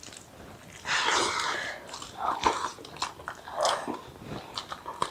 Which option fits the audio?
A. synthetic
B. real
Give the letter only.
B